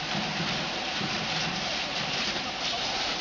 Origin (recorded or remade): remade